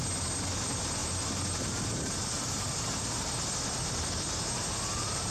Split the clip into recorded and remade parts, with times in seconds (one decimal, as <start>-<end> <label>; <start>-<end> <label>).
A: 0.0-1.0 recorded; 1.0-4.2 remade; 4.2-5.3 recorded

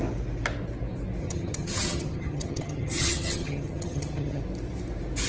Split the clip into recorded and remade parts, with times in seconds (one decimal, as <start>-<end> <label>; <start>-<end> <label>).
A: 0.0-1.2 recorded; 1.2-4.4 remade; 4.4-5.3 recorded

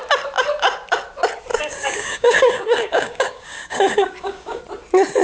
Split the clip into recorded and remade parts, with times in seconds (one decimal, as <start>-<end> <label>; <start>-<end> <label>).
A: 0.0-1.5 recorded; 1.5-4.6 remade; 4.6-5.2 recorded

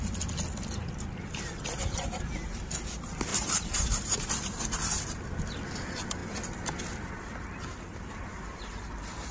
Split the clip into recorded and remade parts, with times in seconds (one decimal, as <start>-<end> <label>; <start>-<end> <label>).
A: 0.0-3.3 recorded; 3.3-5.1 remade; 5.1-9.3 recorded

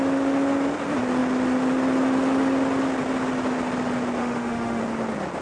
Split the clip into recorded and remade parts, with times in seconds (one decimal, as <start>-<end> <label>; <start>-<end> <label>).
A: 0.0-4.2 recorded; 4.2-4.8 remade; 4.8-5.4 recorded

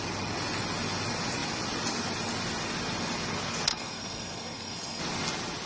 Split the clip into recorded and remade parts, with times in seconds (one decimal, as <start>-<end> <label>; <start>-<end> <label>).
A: 0.0-3.7 recorded; 3.7-5.0 remade; 5.0-5.7 recorded

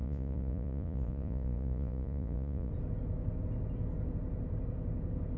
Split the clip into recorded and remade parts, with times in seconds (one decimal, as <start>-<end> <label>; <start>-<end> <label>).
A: 0.0-2.7 remade; 2.7-5.4 recorded

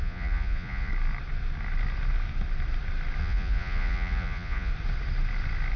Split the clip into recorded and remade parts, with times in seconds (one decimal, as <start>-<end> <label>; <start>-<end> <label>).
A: 0.0-0.9 remade; 0.9-3.2 recorded; 3.2-4.7 remade; 4.7-5.8 recorded